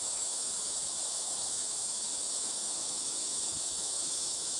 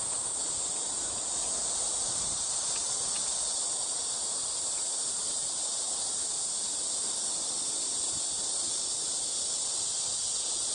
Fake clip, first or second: first